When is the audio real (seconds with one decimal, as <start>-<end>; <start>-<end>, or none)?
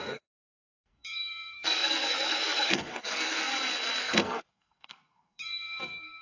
3.5-4.0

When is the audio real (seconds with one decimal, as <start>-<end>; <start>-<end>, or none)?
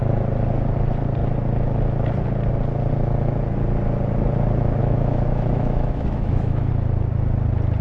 0.0-4.8; 6.7-7.8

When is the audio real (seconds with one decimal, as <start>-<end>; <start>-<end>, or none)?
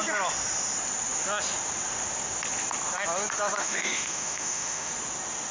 0.0-3.6; 4.9-5.5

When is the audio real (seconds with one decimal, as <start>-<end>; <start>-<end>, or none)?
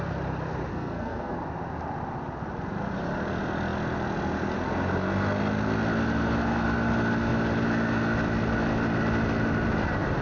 0.0-0.7; 1.4-10.2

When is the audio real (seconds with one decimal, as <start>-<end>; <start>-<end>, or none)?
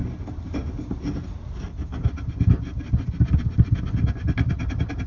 0.0-5.1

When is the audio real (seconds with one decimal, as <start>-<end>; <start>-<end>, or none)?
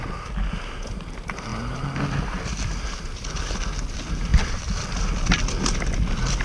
0.0-6.4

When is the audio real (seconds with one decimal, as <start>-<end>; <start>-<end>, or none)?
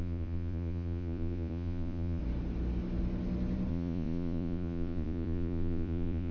2.2-3.7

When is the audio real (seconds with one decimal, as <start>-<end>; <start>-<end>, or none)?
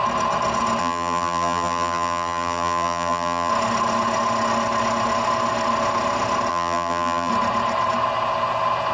0.0-0.8; 3.5-6.5; 7.3-8.9